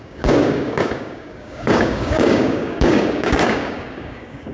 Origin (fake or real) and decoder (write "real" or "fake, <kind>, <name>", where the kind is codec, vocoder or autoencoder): fake, codec, DAC